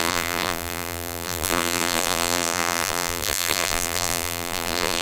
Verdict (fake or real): fake